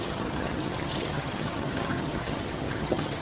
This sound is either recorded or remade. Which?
remade